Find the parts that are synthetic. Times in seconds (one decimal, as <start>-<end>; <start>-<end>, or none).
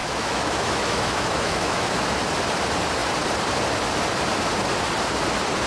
0.0-2.2